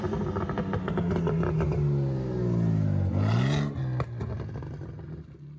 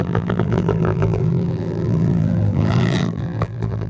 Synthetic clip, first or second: second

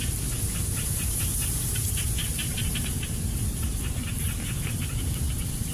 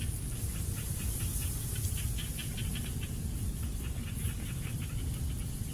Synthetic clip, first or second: first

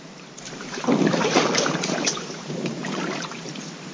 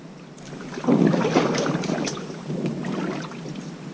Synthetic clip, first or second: first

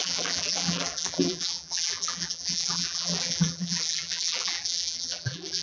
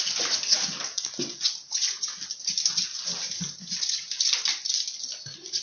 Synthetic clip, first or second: first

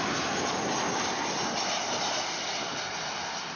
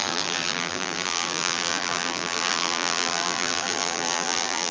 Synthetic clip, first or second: second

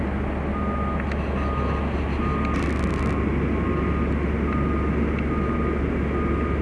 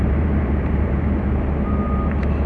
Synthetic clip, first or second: second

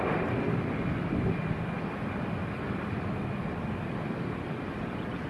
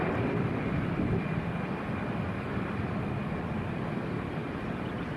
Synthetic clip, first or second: second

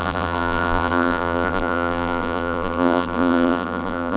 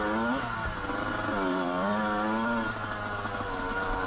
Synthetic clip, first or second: first